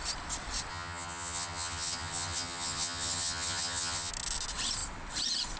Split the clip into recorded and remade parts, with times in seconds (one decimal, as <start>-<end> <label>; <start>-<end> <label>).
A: 0.0-0.7 recorded; 0.7-4.1 remade; 4.1-5.6 recorded